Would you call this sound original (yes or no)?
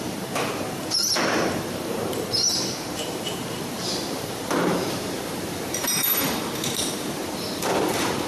no